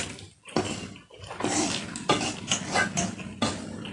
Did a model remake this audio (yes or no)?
no